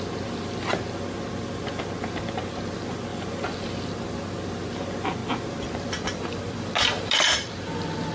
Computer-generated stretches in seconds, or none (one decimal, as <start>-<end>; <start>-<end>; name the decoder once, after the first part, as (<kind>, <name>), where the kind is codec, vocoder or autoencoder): 3.1-3.9 (vocoder, BigVGAN v2)